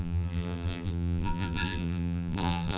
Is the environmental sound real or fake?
fake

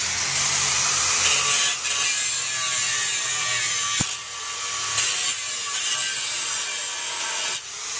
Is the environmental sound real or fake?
real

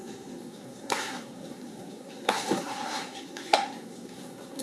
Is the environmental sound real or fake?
fake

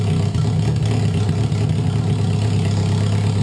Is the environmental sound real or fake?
real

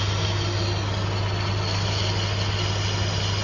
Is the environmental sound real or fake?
real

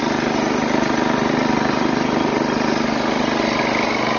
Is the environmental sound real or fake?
real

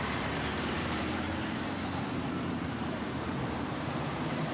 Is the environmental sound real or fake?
fake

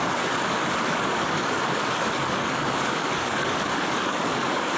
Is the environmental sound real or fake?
fake